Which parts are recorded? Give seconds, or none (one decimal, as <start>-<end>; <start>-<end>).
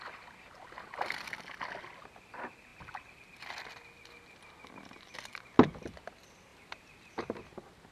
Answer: 0.0-7.9